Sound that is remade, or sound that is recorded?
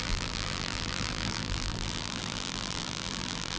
remade